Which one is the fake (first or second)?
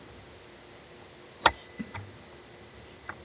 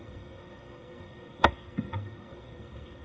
second